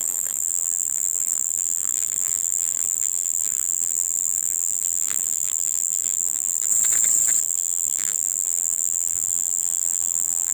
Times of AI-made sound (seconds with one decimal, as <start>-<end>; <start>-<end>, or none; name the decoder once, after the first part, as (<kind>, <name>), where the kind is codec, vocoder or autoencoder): 0.0-6.7 (vocoder, BigVGAN v2); 7.4-10.5